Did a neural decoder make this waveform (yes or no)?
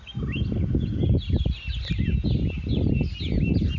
no